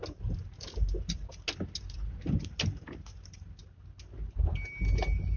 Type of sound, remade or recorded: recorded